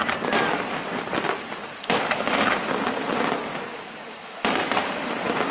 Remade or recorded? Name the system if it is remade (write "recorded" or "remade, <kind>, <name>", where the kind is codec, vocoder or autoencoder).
recorded